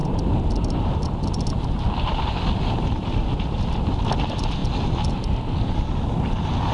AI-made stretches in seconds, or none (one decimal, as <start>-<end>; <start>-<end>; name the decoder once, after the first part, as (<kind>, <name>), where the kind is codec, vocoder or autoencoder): 4.6-6.7 (vocoder, BigVGAN v2)